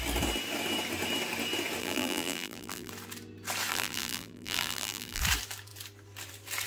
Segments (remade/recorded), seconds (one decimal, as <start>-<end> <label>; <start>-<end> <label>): 0.0-1.8 recorded; 1.8-2.9 remade; 2.9-3.7 recorded; 3.7-5.2 remade; 5.2-6.7 recorded